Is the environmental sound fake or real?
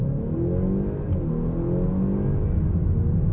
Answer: real